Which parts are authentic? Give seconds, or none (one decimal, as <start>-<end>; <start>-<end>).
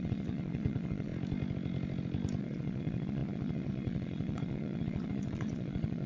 1.1-2.4